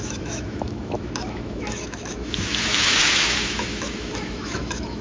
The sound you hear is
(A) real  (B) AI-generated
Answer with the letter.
B